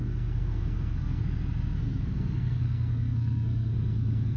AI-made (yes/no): yes